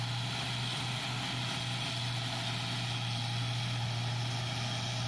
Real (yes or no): yes